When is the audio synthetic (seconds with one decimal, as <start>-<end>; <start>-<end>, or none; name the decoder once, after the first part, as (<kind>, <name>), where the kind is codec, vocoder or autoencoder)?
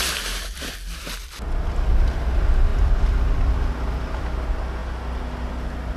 none